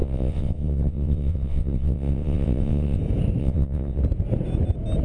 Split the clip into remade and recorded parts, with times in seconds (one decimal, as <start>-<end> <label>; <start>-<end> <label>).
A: 0.0-3.0 remade; 3.0-3.4 recorded; 3.4-4.0 remade; 4.0-5.0 recorded